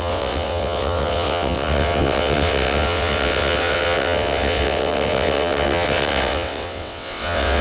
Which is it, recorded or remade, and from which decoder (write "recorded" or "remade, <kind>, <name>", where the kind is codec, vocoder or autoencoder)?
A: remade, vocoder, WaveNeXt